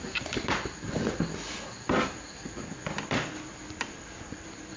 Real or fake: real